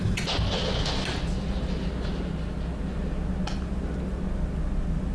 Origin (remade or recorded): recorded